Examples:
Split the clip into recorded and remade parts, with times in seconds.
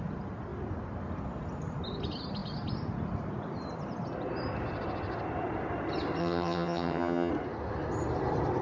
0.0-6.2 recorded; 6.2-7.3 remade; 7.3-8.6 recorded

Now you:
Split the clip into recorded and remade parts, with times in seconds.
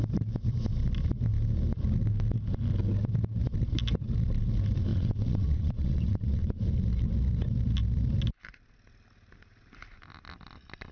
0.0-4.9 recorded; 4.9-6.6 remade; 6.6-10.9 recorded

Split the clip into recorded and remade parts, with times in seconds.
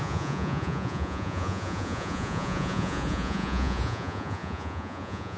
0.0-5.4 remade